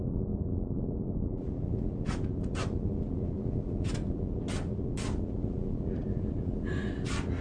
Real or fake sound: real